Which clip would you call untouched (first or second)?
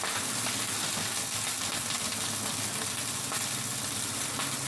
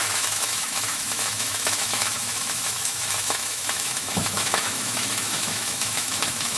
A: first